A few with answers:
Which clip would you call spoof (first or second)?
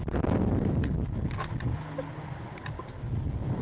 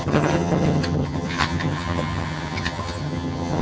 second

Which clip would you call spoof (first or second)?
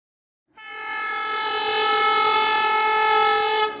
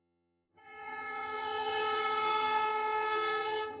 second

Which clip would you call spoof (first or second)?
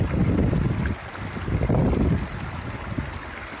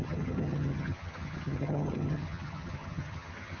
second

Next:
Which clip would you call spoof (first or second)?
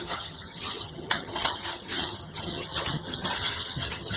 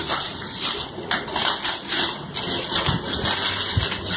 first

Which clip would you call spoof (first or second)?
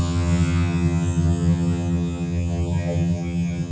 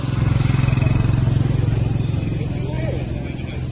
first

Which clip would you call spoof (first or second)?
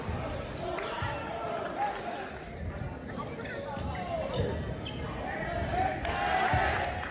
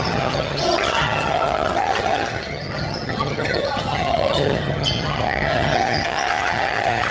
second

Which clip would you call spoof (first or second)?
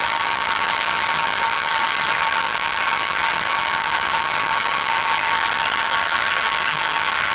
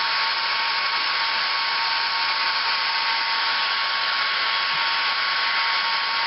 first